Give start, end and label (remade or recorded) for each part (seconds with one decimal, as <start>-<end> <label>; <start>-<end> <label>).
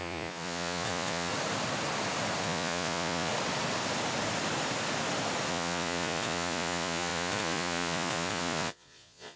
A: 0.0-1.3 remade; 1.3-2.4 recorded; 2.4-3.3 remade; 3.3-5.5 recorded; 5.5-9.4 remade